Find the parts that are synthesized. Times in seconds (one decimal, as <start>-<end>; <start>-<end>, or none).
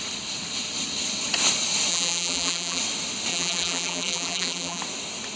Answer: 1.9-2.8; 3.3-4.8